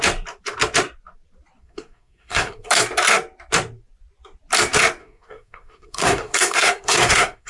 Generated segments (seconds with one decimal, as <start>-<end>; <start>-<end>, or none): 1.6-2.7; 5.0-7.5